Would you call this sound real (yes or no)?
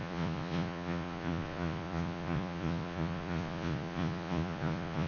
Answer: no